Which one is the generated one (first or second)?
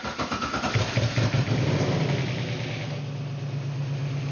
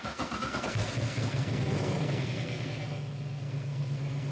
second